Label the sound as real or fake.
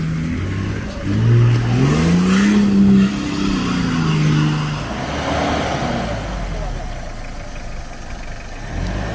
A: real